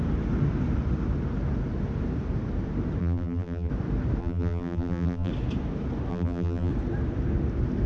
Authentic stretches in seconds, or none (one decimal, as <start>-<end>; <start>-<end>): 0.0-3.0; 3.7-4.2; 5.3-6.1; 6.7-7.9